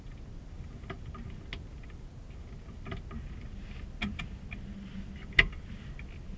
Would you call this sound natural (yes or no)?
yes